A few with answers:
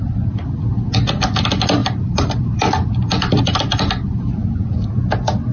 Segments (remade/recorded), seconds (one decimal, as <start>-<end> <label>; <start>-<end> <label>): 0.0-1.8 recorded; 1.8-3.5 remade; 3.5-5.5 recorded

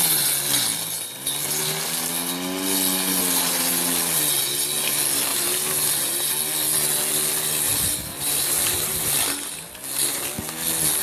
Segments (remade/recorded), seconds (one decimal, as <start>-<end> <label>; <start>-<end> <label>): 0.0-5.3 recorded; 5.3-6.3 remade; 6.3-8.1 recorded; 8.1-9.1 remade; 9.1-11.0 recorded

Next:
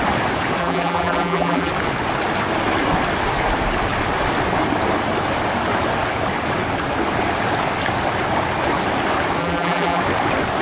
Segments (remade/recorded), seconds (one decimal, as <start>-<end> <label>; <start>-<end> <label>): 0.0-0.6 recorded; 0.6-1.7 remade; 1.7-9.4 recorded; 9.4-10.0 remade; 10.0-10.6 recorded

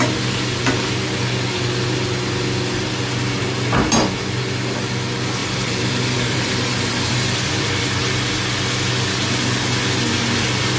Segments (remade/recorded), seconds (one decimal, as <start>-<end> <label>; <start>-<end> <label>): 0.0-5.4 recorded; 5.4-8.0 remade; 8.0-10.8 recorded

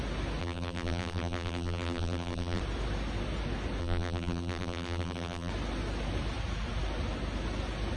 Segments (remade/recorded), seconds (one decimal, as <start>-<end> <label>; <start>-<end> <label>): 0.0-0.4 recorded; 0.4-2.6 remade; 2.6-3.8 recorded; 3.8-5.5 remade; 5.5-8.0 recorded

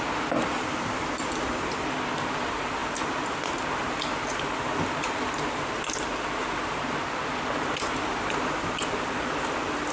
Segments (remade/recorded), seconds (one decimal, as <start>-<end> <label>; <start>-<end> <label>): 0.0-9.9 recorded

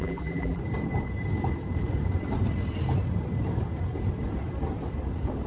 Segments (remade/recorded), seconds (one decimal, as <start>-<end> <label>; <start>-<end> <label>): 0.0-0.6 remade; 0.6-5.5 recorded

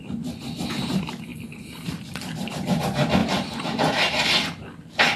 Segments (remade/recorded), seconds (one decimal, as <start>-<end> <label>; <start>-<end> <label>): 0.0-1.3 recorded; 1.3-2.8 remade; 2.8-5.2 recorded